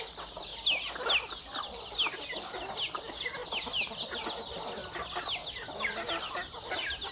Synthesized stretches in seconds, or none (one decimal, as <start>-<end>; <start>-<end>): none